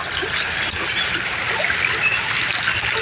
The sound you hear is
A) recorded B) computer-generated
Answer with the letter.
A